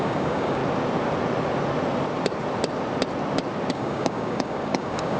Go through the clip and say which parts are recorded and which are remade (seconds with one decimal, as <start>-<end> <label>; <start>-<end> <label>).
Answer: 0.0-0.6 remade; 0.6-3.7 recorded; 3.7-5.2 remade